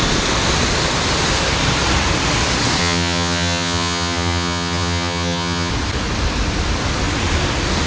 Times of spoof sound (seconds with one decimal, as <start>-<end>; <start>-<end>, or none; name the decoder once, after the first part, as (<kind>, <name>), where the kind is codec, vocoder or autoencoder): 2.8-5.7 (vocoder, HiFi-GAN)